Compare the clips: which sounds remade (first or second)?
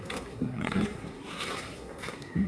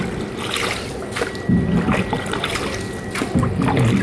first